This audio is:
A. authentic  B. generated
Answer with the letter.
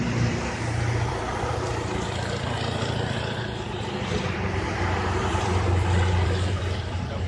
B